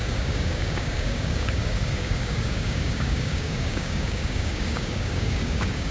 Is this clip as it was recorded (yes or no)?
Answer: no